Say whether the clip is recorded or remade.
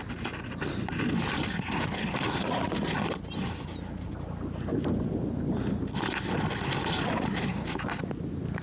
recorded